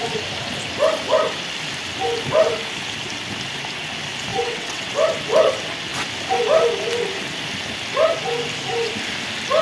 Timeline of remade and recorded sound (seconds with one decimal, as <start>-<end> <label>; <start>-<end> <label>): 0.0-4.3 recorded; 4.3-4.9 remade; 4.9-9.6 recorded